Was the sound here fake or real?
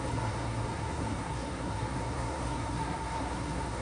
fake